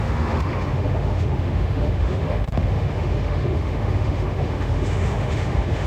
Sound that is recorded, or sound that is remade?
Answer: remade